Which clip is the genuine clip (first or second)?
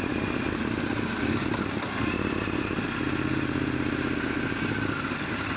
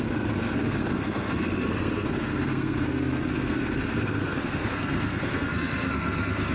first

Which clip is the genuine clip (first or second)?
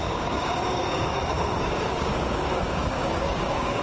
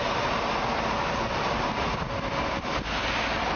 second